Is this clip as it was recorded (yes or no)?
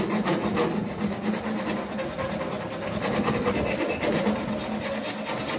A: yes